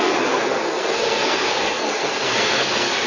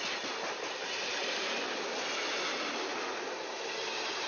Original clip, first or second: second